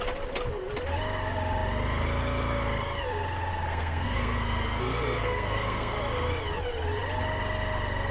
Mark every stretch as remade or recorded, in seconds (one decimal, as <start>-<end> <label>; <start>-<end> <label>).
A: 0.0-3.5 recorded; 3.5-6.0 remade; 6.0-8.1 recorded